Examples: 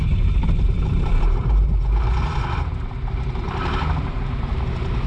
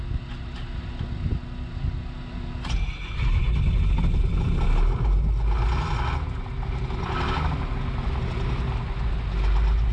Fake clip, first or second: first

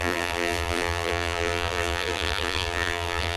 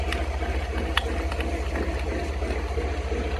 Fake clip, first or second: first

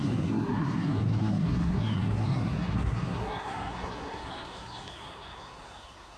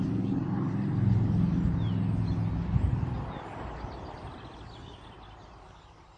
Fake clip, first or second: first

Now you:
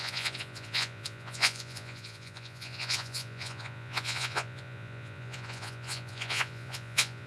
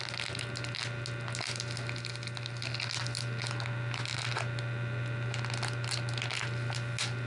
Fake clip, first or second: first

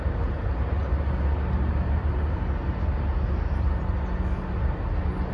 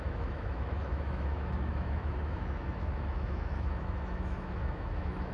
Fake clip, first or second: second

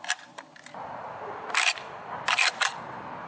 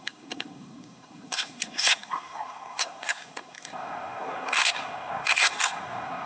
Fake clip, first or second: second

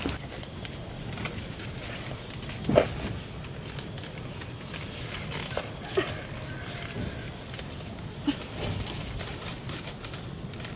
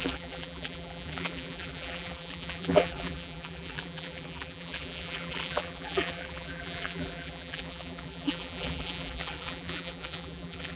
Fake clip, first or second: second